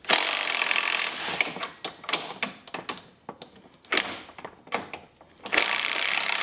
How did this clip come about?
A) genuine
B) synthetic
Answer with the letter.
A